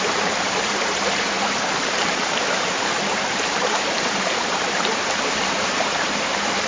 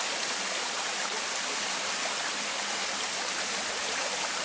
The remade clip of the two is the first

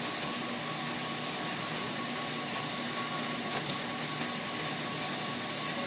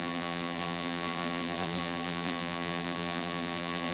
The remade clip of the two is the second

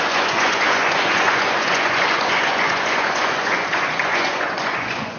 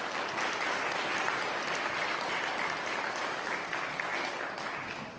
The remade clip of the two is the first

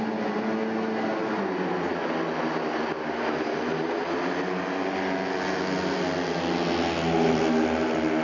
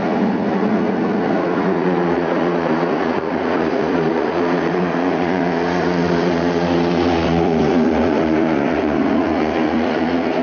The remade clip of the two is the second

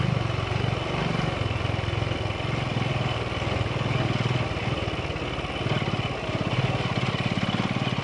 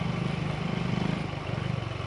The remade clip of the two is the second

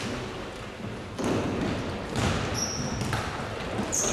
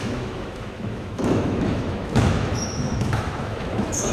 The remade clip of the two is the second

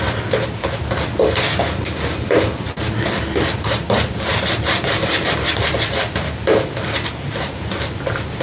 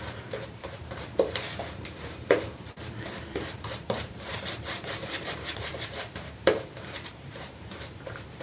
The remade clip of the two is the second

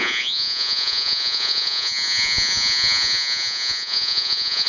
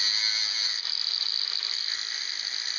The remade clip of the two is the first